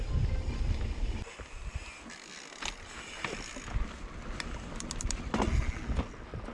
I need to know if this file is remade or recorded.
recorded